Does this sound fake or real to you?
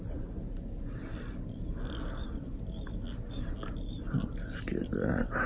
real